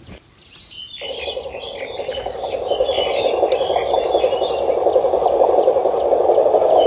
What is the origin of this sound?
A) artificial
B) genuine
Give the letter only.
B